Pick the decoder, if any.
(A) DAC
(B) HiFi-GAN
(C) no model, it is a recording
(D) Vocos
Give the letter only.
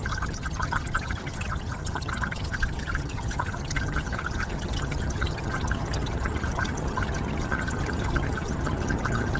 B